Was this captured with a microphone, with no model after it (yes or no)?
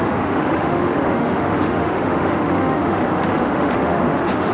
no